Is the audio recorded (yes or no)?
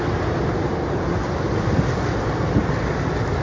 yes